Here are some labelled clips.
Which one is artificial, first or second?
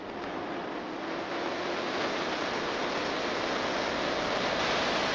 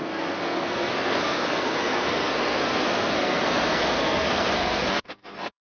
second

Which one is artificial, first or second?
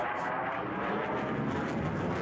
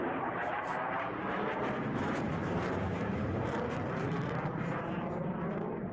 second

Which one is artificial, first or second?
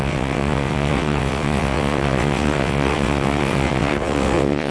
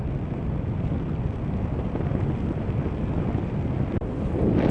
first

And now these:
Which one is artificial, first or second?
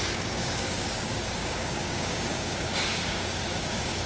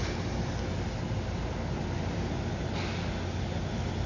first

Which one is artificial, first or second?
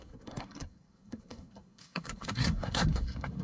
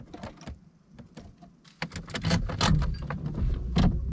first